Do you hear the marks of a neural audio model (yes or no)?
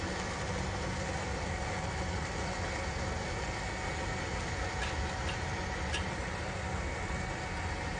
no